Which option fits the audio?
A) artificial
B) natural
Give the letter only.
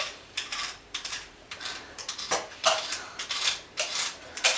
A